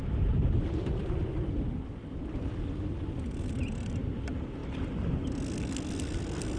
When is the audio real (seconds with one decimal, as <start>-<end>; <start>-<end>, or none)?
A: 0.0-6.6